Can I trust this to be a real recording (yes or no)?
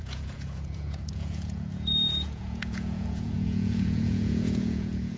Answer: no